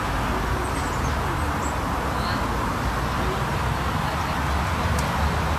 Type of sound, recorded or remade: recorded